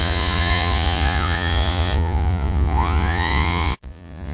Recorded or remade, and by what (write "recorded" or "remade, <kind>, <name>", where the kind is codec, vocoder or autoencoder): remade, vocoder, Vocos